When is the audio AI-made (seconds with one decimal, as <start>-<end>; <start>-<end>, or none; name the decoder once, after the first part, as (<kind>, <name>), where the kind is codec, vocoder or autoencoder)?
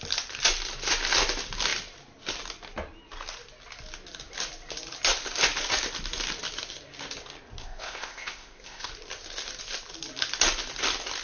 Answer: 7.6-8.9 (codec, ZipCodec)